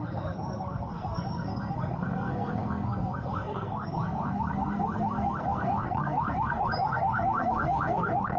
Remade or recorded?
remade